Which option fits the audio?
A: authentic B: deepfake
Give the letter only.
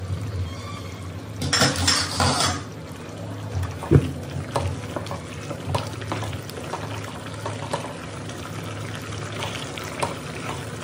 A